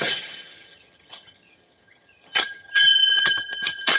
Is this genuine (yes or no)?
no